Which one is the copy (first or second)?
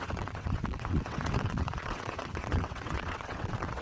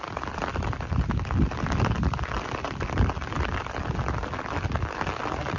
first